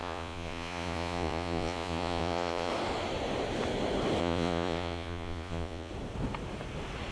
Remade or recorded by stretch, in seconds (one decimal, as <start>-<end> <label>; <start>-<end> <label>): 0.0-2.7 remade; 2.7-4.2 recorded; 4.2-5.9 remade; 5.9-7.1 recorded